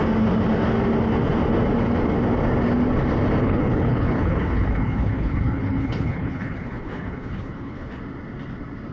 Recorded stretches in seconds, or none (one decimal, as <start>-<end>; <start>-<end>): 0.0-3.4; 8.0-8.9